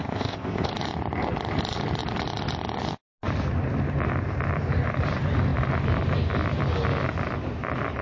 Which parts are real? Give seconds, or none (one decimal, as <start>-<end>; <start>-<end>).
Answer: 0.7-8.0